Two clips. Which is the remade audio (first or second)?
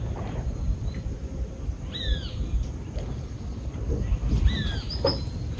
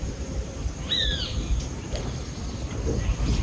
second